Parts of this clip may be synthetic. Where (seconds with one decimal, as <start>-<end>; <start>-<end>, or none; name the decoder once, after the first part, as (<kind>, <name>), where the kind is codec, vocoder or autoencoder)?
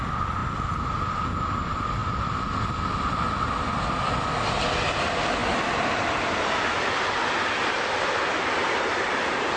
none